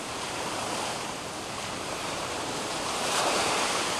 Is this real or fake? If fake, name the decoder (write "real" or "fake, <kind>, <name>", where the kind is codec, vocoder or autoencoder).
fake, vocoder, BigVGAN v2